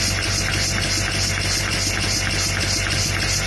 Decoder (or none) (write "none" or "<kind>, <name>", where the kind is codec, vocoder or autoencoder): none